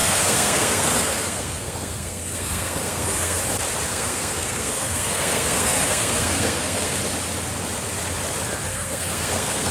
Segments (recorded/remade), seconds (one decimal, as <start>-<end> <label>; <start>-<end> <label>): 0.0-3.4 remade; 3.4-3.9 recorded; 3.9-7.0 remade; 7.0-8.7 recorded; 8.7-9.7 remade